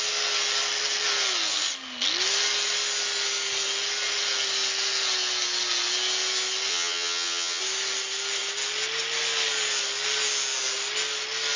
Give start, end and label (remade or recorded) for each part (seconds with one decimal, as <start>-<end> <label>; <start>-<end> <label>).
0.0-6.7 recorded; 6.7-7.6 remade; 7.6-11.6 recorded